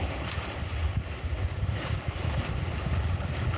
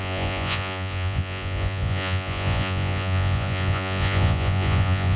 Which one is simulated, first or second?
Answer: second